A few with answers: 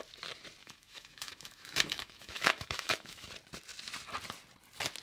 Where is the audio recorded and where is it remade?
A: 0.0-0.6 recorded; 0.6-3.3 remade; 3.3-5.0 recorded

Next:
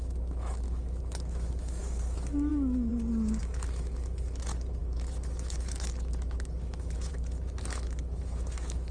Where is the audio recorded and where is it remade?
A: 0.0-2.9 remade; 2.9-3.4 recorded; 3.4-8.9 remade

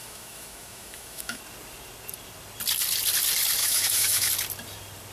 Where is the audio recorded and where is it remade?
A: 0.0-1.4 remade; 1.4-3.6 recorded; 3.6-4.3 remade; 4.3-5.1 recorded

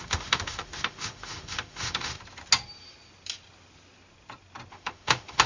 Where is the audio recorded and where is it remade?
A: 0.0-2.2 remade; 2.2-4.7 recorded; 4.7-5.5 remade

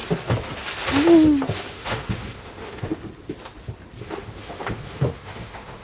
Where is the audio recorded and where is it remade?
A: 0.0-1.7 recorded; 1.7-2.9 remade; 2.9-4.0 recorded; 4.0-5.8 remade